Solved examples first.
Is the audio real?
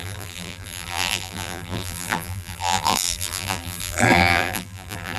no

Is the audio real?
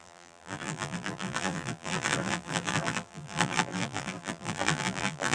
no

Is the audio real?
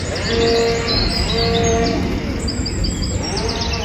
yes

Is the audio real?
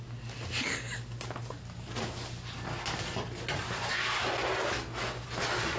yes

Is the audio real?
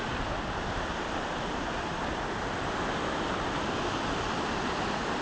no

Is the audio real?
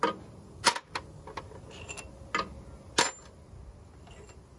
yes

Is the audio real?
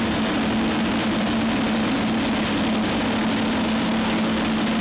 yes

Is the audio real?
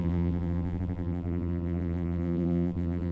no